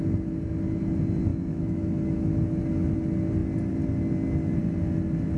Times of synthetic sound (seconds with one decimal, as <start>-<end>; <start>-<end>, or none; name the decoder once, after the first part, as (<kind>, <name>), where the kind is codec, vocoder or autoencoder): 1.3-2.6 (autoencoder, DAC-VAE)